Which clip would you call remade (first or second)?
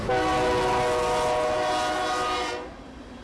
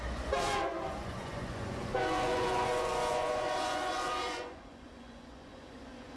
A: second